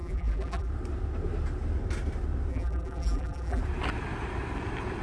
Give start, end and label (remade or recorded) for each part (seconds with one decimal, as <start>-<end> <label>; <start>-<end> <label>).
0.0-0.7 remade; 0.7-2.5 recorded; 2.5-3.6 remade; 3.6-5.0 recorded